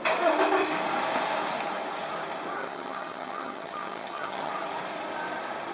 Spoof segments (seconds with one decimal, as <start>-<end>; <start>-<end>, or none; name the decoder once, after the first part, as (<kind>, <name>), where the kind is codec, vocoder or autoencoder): 2.6-4.5 (vocoder, HiFi-GAN)